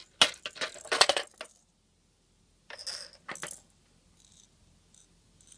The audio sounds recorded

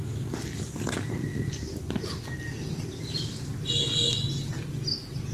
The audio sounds recorded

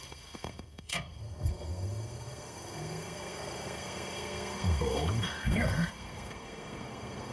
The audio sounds remade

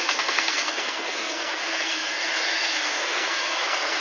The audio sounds remade